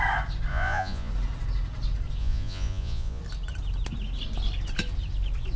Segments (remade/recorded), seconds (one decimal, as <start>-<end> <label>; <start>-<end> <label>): 0.0-0.5 recorded; 0.5-1.1 remade; 1.1-2.2 recorded; 2.2-3.2 remade; 3.2-5.6 recorded